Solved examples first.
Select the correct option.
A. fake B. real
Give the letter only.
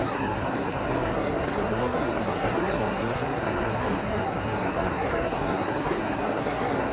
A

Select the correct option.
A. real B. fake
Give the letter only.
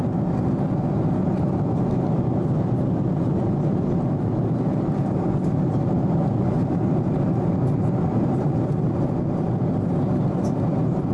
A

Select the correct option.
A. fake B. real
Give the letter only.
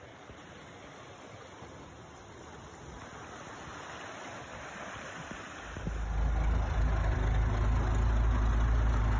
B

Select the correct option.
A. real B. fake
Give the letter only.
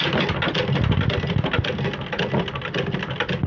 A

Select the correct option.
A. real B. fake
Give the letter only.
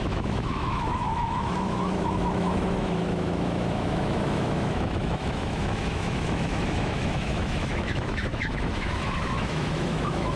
B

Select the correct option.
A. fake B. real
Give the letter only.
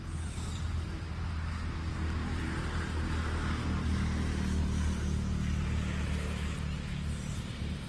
B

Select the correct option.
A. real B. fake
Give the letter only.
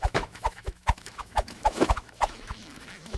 B